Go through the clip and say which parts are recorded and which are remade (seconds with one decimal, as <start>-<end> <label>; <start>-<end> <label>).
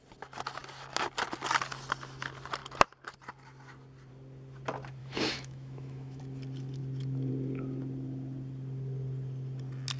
0.0-5.0 recorded; 5.0-6.2 remade; 6.2-10.0 recorded